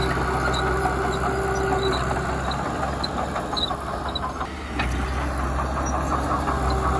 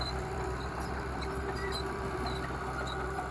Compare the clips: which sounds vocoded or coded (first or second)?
second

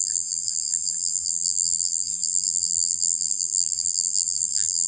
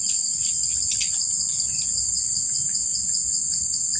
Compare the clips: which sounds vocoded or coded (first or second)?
first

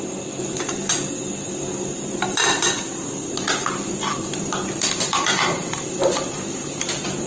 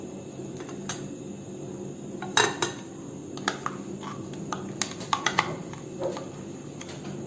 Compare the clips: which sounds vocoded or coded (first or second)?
first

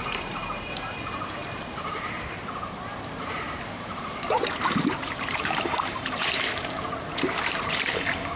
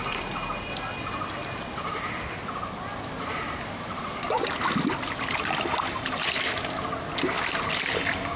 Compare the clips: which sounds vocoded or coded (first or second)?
first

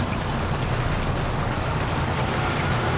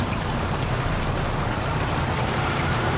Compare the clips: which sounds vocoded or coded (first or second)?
second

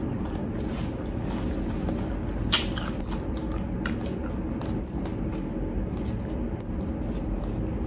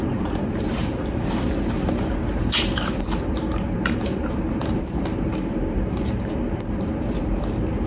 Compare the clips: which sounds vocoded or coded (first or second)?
second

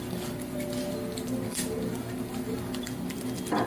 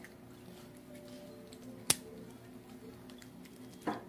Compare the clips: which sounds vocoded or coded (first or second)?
first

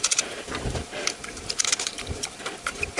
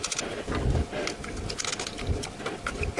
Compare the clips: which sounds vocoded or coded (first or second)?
first